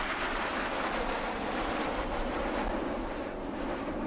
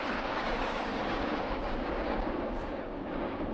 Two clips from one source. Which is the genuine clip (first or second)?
first